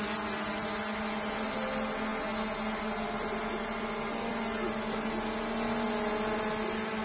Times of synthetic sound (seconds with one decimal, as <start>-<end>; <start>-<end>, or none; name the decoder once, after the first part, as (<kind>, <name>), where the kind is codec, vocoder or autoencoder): none